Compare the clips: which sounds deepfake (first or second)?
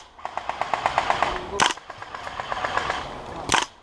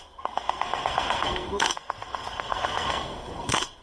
second